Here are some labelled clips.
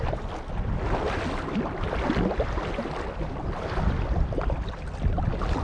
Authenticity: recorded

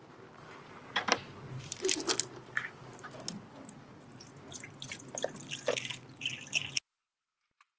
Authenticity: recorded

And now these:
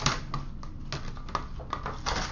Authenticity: recorded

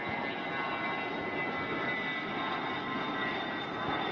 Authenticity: recorded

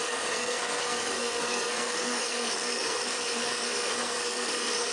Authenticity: remade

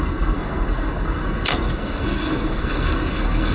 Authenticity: remade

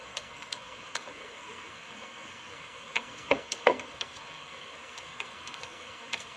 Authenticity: remade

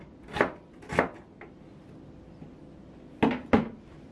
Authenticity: recorded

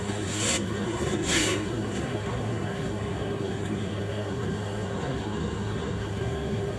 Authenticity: remade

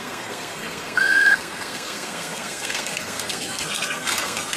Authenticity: remade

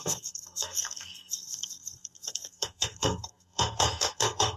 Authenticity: remade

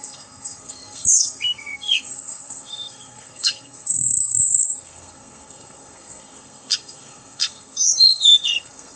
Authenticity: remade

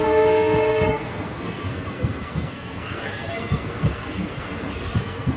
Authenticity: remade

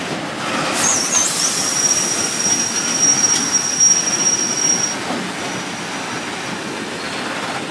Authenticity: recorded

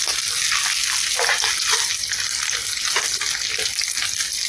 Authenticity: recorded